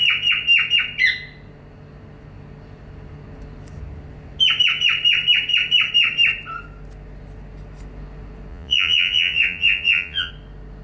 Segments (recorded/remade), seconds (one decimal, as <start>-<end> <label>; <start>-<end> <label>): 0.0-8.5 recorded; 8.5-10.3 remade; 10.3-10.8 recorded

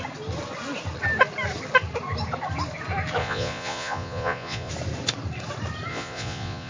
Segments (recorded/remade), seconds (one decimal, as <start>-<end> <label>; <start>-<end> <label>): 0.0-3.2 recorded; 3.2-4.7 remade; 4.7-5.9 recorded; 5.9-6.7 remade

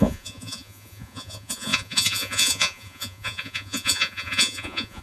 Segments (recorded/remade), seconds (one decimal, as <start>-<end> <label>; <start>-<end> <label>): 0.0-5.0 remade

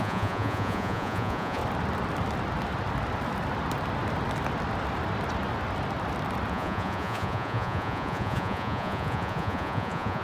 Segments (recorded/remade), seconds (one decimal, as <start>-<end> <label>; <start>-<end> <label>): 0.0-1.6 remade; 1.6-6.5 recorded; 6.5-10.2 remade

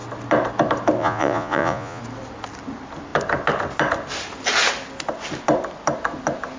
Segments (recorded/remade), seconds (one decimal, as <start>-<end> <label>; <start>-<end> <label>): 0.0-1.0 recorded; 1.0-2.0 remade; 2.0-6.6 recorded

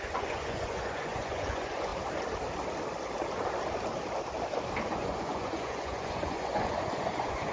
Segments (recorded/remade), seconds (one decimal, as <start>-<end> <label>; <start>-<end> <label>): 0.0-1.9 remade; 1.9-4.9 recorded; 4.9-7.5 remade

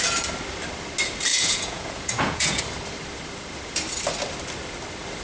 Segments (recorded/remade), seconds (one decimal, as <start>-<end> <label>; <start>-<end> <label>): 0.0-1.3 recorded; 1.3-2.6 remade; 2.6-5.2 recorded